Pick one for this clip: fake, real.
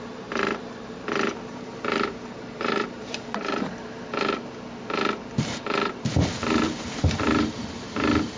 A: fake